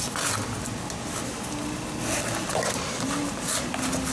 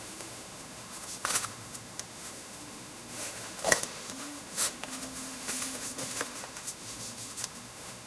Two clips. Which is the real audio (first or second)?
first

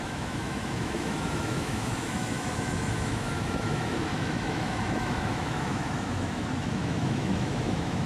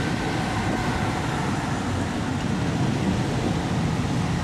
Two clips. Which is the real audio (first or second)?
second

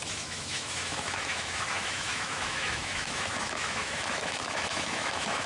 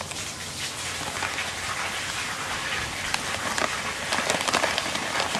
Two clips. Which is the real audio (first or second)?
second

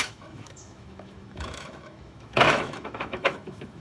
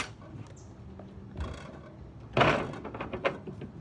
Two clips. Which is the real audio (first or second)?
second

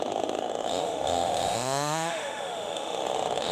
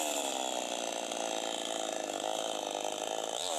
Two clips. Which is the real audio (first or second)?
second